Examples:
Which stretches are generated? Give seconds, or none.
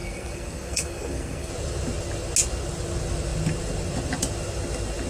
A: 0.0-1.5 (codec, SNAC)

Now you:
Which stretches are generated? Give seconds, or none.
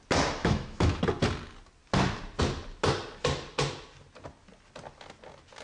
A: 0.4-1.0 (autoencoder, DAC-VAE)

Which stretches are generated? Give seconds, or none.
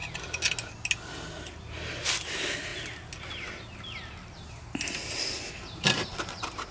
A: none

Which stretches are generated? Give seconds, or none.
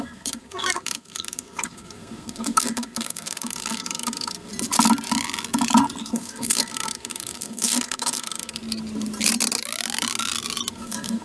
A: 0.0-4.5 (codec, SNAC); 6.0-8.6; 10.7-11.2